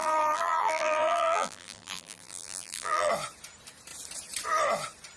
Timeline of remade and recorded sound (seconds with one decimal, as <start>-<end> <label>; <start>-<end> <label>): 0.0-3.1 remade; 3.1-5.2 recorded